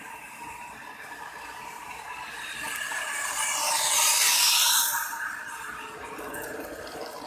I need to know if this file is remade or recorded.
remade